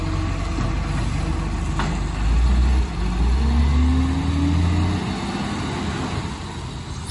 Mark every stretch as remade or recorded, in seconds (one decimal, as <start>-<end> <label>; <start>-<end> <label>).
0.0-7.1 recorded